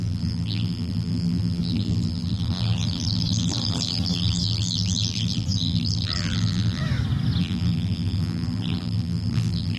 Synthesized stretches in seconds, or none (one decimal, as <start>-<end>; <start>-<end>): 0.0-6.8; 7.4-9.8